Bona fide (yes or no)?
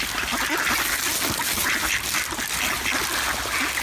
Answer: yes